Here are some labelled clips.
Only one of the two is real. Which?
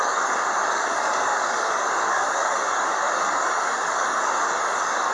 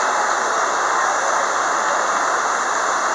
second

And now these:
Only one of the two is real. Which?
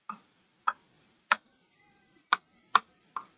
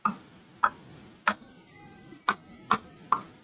second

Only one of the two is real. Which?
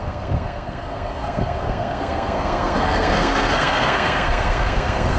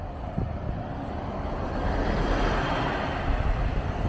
second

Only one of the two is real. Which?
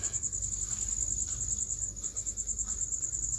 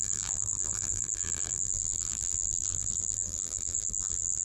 first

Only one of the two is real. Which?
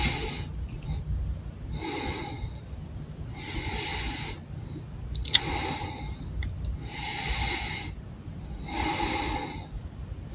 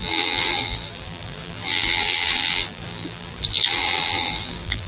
first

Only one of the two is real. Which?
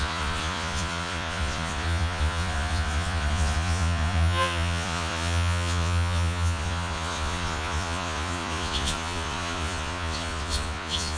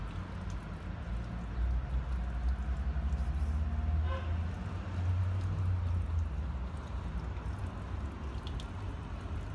second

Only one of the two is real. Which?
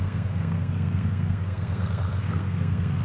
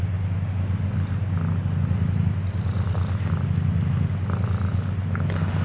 second